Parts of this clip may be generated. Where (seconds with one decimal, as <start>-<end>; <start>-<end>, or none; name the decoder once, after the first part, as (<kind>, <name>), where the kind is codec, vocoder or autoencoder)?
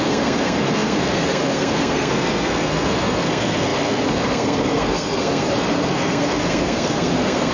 0.0-7.5 (codec, SNAC)